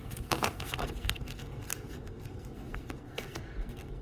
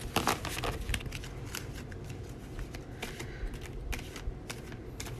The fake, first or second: first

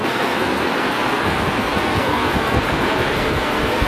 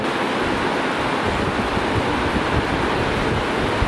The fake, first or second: first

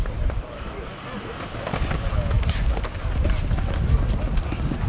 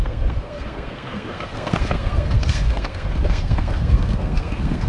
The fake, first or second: second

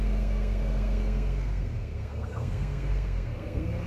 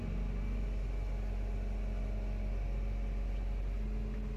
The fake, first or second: first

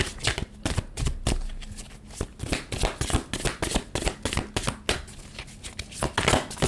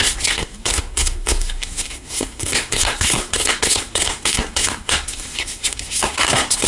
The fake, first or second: second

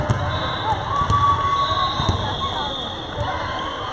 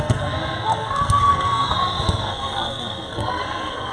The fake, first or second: second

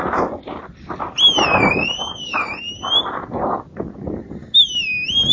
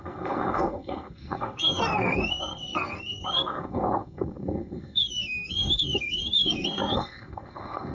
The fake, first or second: second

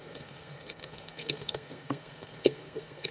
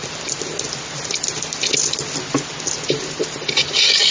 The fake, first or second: first